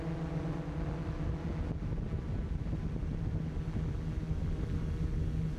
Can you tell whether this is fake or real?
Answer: real